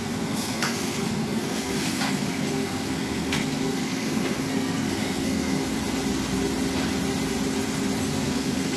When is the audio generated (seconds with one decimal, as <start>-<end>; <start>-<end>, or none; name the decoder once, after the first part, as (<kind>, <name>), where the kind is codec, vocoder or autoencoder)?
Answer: 0.0-5.8 (codec, SNAC); 8.0-8.8